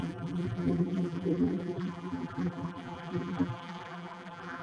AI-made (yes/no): yes